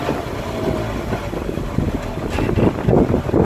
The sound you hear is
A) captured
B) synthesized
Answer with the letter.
A